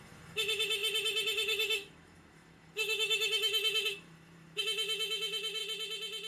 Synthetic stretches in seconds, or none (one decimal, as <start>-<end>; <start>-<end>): 0.0-5.6